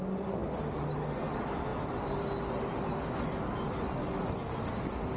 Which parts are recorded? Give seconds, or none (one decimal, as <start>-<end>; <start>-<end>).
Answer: 0.0-5.2